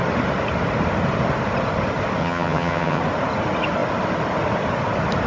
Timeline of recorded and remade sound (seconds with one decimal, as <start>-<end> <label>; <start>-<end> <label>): 0.0-2.2 recorded; 2.2-3.0 remade; 3.0-5.3 recorded